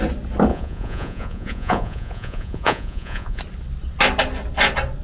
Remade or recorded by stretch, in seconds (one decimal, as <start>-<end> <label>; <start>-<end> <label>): 0.0-0.5 recorded; 0.5-3.4 remade; 3.4-5.0 recorded